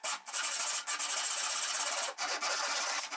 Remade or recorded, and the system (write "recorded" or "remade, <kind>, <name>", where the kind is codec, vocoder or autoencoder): recorded